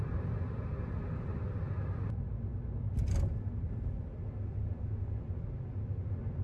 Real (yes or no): yes